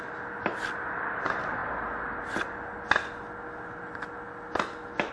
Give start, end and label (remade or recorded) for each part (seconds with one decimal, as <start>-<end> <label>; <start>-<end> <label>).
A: 0.0-5.1 recorded